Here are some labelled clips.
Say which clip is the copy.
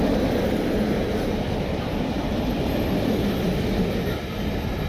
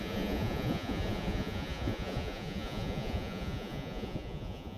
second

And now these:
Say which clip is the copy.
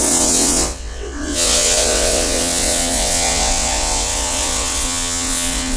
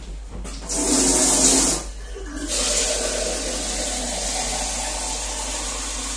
first